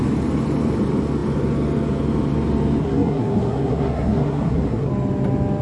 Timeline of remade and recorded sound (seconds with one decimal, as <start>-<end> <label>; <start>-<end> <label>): 0.0-2.8 recorded; 2.8-4.9 remade; 4.9-5.6 recorded